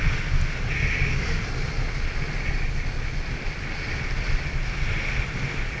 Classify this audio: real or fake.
real